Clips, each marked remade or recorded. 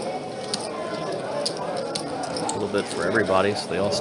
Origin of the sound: recorded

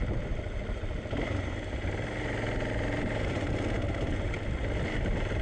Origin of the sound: recorded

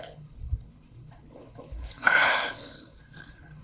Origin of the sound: remade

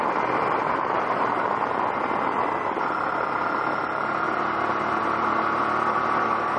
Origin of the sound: recorded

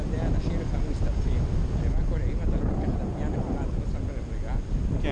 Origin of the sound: recorded